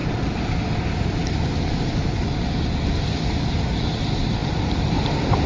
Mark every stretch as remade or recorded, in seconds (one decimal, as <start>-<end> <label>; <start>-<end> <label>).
0.0-5.5 recorded